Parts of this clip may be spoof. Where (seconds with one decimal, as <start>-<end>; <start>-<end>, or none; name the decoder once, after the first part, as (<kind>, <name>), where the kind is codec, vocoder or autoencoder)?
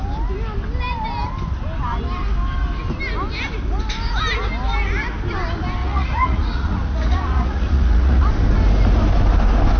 5.8-8.3 (vocoder, Vocos)